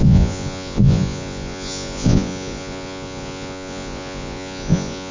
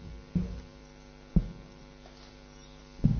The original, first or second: second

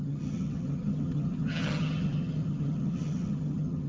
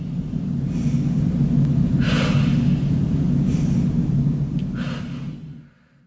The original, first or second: second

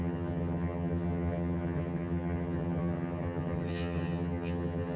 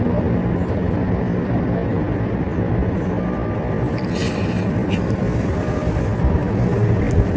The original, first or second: second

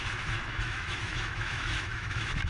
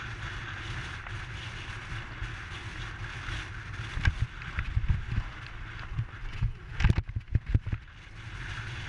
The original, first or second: second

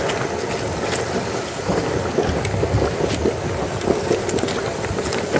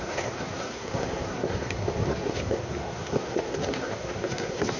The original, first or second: first